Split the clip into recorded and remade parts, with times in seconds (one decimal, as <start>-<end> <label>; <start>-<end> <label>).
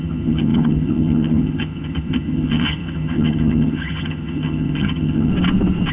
0.0-5.3 remade; 5.3-5.9 recorded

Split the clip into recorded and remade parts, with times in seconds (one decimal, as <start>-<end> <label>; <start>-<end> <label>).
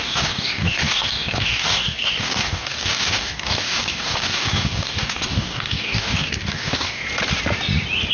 0.0-7.0 remade; 7.0-8.1 recorded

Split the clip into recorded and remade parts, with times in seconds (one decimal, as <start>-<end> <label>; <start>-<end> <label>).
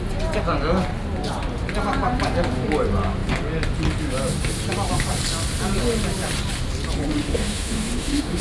0.0-7.2 recorded; 7.2-8.4 remade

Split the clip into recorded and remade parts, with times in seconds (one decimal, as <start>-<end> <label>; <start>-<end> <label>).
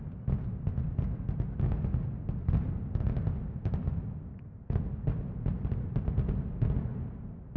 0.0-7.6 recorded